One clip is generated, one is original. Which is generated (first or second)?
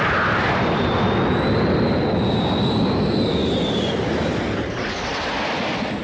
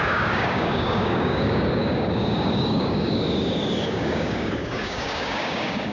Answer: second